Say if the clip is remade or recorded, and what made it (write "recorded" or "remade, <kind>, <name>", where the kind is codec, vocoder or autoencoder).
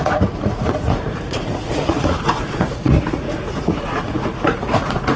remade, vocoder, Vocos